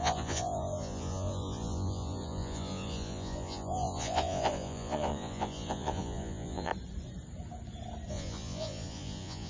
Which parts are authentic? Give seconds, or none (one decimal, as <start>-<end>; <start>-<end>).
6.7-8.1